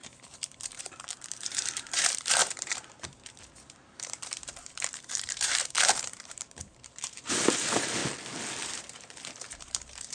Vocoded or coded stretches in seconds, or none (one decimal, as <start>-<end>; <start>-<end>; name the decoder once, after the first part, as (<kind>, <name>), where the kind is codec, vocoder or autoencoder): 0.0-8.0 (vocoder, BigVGAN v2); 8.6-10.1